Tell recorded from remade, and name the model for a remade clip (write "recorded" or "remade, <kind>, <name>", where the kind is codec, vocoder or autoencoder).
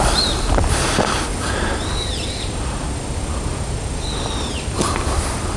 recorded